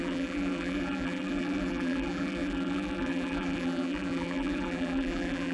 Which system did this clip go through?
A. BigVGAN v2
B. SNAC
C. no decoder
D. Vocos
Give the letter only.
A